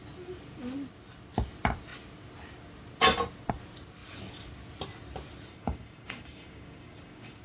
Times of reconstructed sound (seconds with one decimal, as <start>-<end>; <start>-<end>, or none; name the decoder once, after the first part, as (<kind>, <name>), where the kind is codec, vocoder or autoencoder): 5.5-7.4 (codec, DAC)